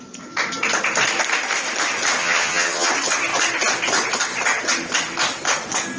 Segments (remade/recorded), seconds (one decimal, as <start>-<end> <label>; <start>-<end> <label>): 0.0-2.2 recorded; 2.2-2.9 remade; 2.9-6.0 recorded